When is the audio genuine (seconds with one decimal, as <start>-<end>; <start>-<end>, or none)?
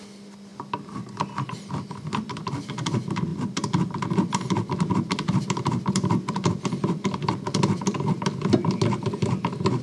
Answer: 0.0-3.3; 6.5-9.8